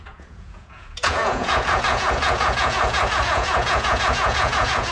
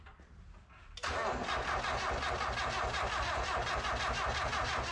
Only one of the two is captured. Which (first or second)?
second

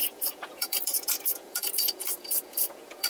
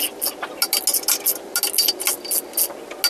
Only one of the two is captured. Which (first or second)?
second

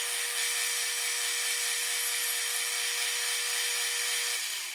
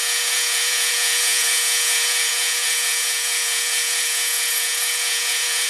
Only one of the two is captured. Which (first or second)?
first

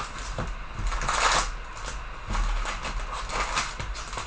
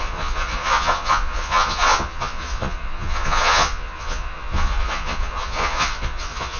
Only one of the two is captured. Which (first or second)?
first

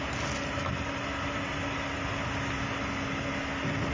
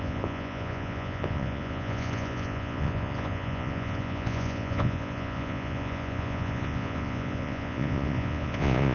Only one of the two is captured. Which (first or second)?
first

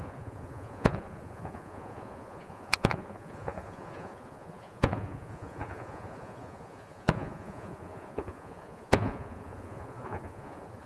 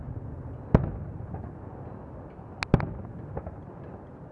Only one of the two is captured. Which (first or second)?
second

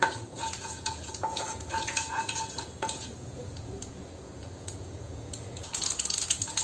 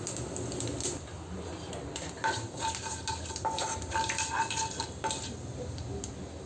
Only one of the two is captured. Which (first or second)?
second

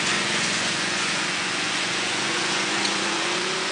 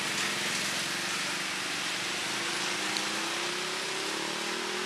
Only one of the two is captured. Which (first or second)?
second